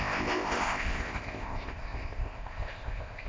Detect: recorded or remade remade